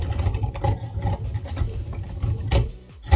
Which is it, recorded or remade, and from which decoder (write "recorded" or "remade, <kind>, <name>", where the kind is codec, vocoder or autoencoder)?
recorded